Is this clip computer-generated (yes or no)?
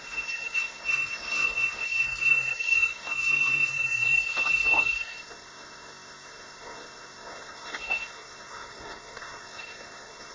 yes